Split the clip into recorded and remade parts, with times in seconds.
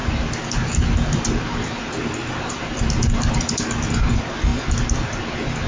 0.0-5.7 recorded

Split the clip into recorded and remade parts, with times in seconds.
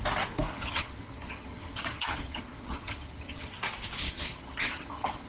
0.0-0.5 recorded; 0.5-3.5 remade; 3.5-4.0 recorded; 4.0-5.3 remade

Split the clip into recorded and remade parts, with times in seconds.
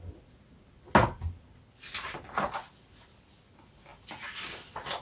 0.0-5.0 recorded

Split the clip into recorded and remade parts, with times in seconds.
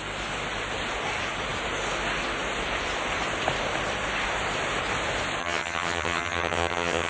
0.0-5.4 recorded; 5.4-7.1 remade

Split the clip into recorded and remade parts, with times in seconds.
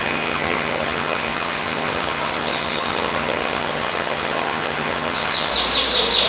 0.0-5.5 remade; 5.5-6.3 recorded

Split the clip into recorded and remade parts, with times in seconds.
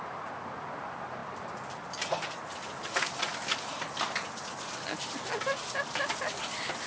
0.0-6.9 recorded